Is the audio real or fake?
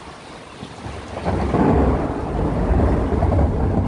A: real